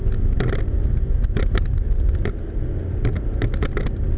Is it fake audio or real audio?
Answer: real